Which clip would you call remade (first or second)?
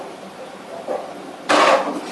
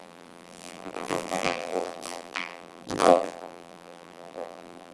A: second